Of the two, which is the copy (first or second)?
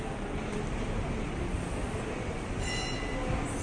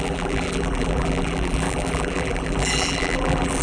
second